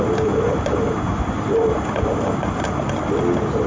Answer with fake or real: real